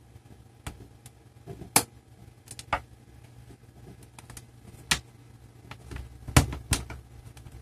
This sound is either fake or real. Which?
real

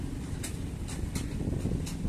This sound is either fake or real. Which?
real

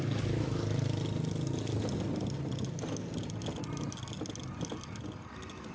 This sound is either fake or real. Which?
real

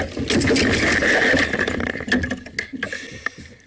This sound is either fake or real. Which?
real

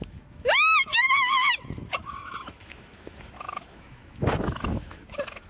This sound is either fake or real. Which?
fake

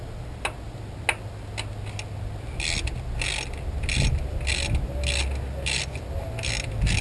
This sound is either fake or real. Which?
real